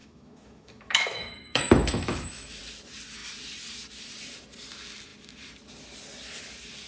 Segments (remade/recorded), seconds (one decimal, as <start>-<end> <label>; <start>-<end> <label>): 0.0-2.6 remade; 2.6-6.9 recorded